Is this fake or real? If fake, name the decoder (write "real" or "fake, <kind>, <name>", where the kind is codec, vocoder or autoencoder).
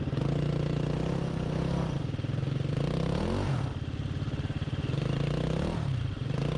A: real